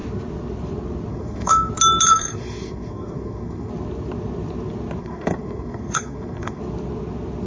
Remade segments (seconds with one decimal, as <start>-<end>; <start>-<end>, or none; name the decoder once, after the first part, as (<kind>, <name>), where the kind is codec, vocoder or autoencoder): 1.1-1.7 (codec, SNAC); 2.1-3.7; 5.0-6.6